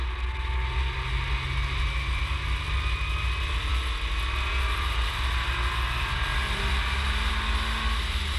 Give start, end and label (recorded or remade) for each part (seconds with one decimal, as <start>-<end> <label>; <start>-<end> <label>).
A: 0.0-8.4 recorded